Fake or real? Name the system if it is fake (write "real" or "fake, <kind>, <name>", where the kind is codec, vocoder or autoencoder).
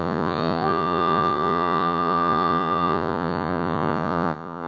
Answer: fake, vocoder, Vocos